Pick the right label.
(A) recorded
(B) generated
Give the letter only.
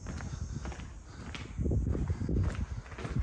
A